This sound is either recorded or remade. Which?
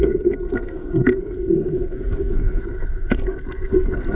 remade